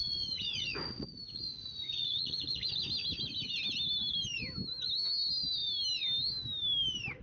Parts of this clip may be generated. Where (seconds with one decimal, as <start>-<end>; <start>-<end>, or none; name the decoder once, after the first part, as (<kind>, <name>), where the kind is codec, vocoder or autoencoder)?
0.0-2.7 (vocoder, Vocos)